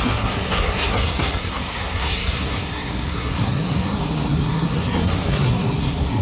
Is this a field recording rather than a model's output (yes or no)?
no